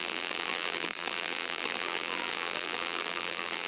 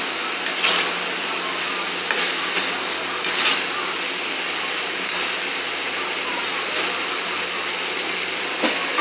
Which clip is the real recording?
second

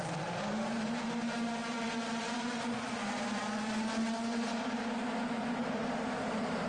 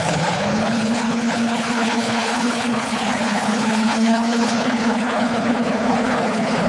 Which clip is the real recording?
first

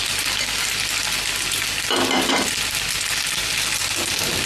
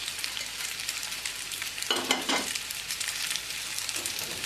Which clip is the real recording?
first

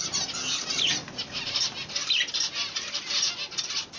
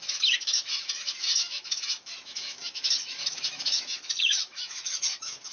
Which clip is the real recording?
first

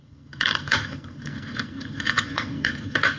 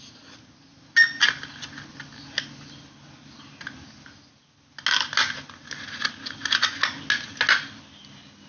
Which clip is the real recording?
second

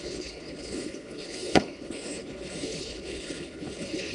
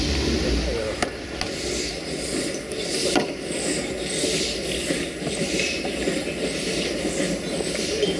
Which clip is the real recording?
second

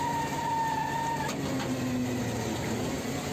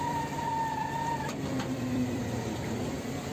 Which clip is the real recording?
first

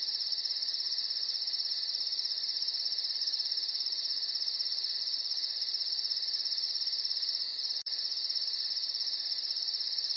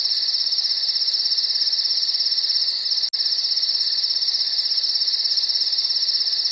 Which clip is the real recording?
second